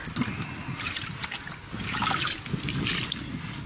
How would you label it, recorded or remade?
recorded